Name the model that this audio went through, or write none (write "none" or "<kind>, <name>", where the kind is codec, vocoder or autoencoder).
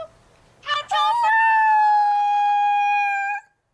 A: none